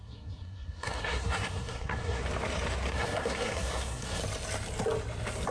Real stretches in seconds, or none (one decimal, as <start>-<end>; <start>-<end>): 2.2-2.9; 4.2-5.5